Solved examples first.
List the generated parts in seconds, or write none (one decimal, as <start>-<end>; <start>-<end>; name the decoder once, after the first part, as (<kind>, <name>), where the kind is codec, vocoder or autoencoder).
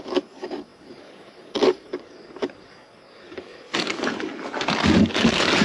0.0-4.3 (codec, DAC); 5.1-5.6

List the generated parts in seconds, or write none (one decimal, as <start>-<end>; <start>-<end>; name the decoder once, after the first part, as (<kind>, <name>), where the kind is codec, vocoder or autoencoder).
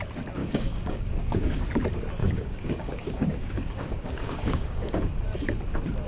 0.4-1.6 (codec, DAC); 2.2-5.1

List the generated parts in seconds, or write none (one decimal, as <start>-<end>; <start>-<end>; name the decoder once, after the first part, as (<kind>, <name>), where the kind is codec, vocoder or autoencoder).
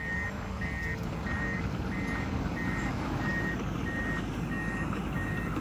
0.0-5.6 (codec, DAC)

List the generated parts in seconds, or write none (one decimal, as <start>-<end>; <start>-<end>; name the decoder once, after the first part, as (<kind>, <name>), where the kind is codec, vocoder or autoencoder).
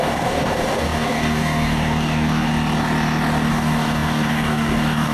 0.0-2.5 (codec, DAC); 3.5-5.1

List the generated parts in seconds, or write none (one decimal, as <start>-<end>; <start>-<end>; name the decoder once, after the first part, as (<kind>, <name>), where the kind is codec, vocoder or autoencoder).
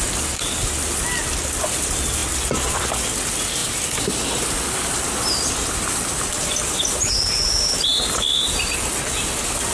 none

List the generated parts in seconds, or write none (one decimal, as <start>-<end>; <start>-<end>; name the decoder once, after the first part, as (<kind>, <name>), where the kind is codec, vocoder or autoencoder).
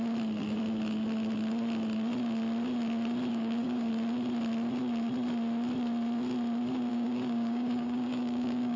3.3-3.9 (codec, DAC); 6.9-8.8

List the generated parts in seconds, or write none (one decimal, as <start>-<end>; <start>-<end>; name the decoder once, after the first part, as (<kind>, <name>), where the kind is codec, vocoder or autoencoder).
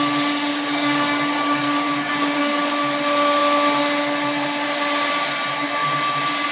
0.5-2.6 (codec, DAC)